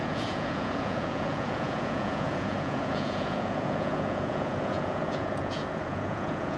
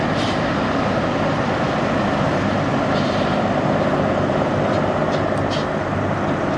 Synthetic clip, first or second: first